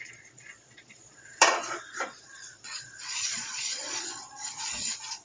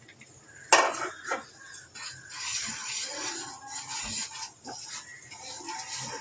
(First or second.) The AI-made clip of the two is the first